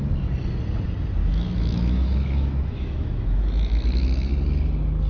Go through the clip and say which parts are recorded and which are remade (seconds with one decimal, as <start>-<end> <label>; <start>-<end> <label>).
0.0-1.2 recorded; 1.2-4.3 remade; 4.3-5.1 recorded